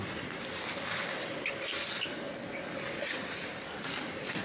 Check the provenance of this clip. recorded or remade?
recorded